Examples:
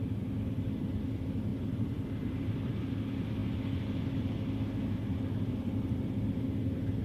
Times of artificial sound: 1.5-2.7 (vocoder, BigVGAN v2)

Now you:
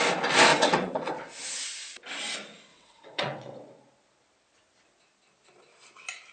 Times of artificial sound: 0.5-1.1 (vocoder, WaveNeXt); 2.7-3.7

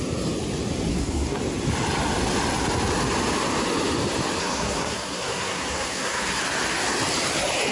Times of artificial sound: 0.9-1.4 (codec, SNAC); 4.4-6.4

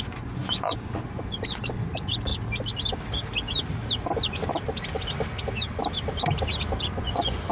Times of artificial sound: 0.0-2.3 (vocoder, Vocos); 6.8-7.5

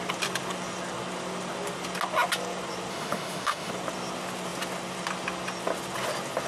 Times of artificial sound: 2.9-3.7 (autoencoder, DAC-VAE)

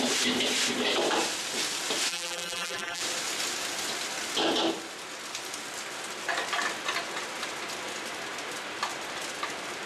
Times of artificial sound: 2.1-3.0 (vocoder, BigVGAN v2)

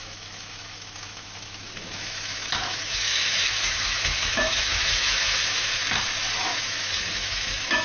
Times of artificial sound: 0.0-5.8 (autoencoder, DAC-VAE); 6.4-7.8